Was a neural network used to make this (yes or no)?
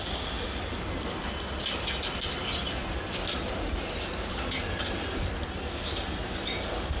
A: no